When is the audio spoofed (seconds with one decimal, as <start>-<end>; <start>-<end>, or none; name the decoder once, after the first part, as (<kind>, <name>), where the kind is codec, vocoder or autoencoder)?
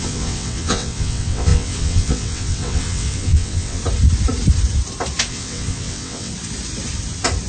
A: 0.0-3.8 (vocoder, WaveNeXt); 5.3-6.3